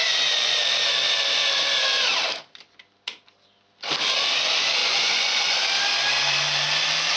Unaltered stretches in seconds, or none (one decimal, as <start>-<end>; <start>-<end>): 0.6-4.8; 5.6-7.2